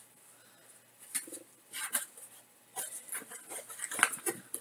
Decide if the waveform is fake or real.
real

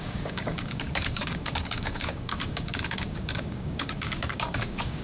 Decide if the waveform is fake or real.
fake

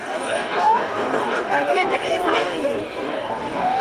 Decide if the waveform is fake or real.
fake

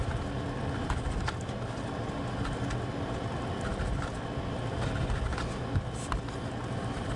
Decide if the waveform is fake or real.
real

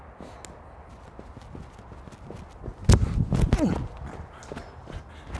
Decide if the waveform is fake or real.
real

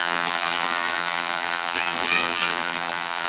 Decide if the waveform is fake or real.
fake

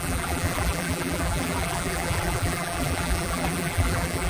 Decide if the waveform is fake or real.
fake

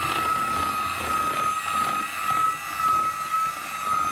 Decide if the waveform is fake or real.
real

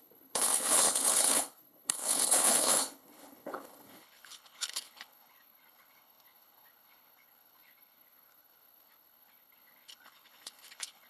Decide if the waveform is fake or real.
fake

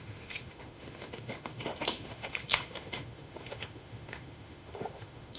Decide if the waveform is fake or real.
fake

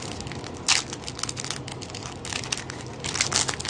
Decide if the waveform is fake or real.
real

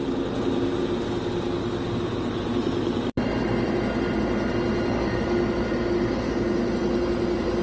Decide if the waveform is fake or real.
real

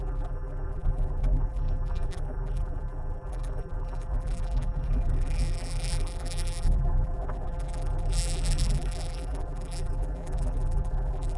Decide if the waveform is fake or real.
fake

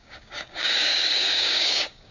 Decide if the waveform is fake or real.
fake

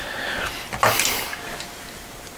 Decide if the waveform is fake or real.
real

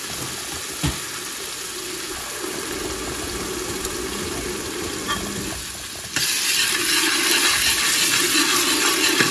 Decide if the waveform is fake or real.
real